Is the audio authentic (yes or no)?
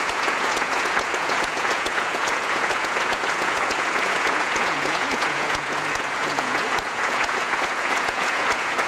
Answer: no